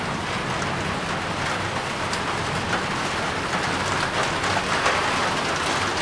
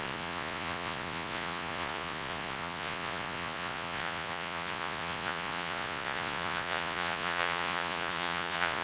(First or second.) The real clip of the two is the first